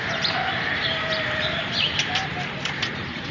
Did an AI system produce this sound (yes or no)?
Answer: yes